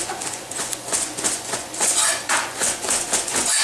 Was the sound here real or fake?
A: fake